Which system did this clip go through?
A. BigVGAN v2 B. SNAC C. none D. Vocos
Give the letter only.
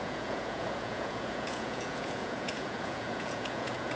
D